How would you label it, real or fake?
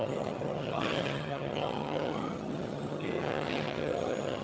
fake